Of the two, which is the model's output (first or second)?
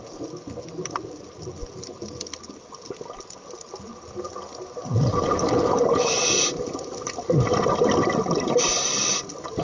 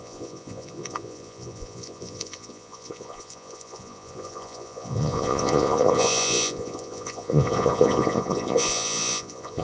second